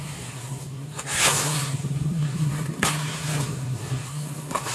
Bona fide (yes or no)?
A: no